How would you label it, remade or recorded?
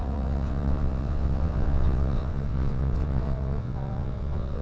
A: remade